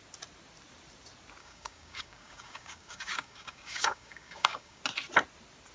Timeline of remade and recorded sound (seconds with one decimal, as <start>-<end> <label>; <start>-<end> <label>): 0.0-1.4 recorded; 1.4-4.8 remade; 4.8-5.7 recorded